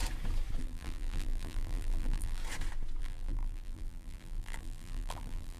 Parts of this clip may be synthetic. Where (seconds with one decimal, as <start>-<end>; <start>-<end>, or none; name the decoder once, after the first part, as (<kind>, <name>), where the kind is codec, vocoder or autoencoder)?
0.6-2.4 (vocoder, BigVGAN v2); 3.0-5.6